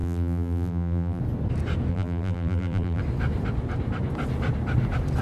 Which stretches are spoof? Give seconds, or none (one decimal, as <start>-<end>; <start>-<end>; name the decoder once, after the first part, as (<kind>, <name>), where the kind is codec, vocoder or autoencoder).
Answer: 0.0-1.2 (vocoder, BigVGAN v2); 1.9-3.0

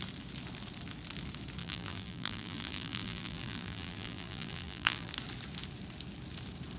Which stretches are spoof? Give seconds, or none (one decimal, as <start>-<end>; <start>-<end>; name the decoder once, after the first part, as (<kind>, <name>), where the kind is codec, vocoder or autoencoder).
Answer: 1.6-5.1 (vocoder, BigVGAN v2)

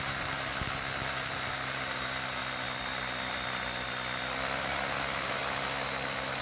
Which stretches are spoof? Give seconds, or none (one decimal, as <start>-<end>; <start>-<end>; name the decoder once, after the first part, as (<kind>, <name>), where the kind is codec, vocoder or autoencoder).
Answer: 0.0-0.5 (vocoder, BigVGAN v2); 1.1-2.4